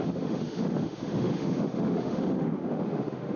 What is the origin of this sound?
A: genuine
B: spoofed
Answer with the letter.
B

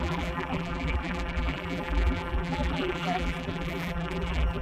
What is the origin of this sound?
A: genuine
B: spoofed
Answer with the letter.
B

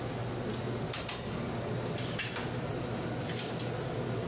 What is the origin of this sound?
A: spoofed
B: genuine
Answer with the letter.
B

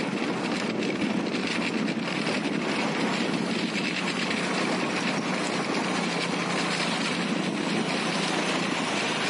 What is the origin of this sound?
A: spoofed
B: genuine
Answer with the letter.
B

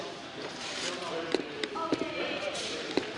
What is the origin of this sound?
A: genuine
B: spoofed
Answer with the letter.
B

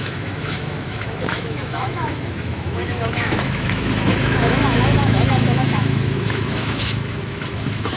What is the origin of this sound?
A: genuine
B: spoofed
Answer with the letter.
B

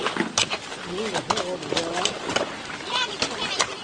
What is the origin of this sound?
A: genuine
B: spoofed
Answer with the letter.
A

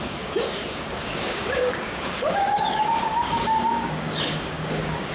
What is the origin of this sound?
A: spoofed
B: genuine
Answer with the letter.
A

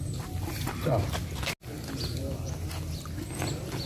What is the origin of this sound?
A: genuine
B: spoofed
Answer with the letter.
A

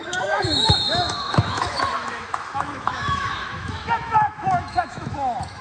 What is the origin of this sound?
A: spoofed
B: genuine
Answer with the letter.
A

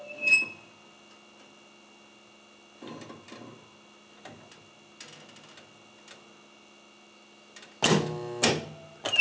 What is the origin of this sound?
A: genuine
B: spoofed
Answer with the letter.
A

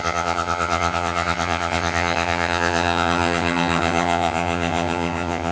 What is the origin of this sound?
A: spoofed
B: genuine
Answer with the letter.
A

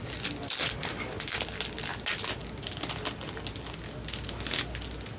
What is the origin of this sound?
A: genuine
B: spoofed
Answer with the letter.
A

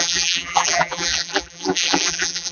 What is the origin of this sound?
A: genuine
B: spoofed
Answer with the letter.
B